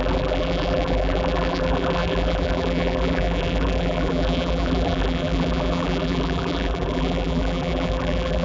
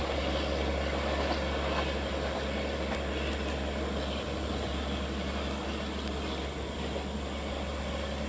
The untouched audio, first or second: second